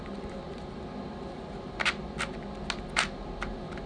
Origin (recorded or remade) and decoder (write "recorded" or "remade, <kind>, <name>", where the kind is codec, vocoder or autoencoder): recorded